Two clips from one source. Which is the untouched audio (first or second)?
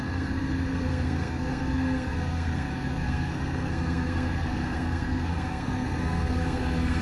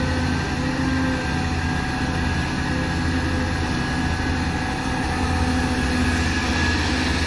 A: second